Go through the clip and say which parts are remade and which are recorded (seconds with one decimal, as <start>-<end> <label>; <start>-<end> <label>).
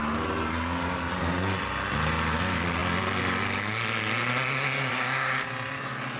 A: 0.0-6.2 recorded